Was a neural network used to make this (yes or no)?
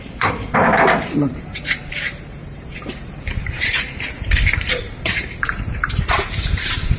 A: yes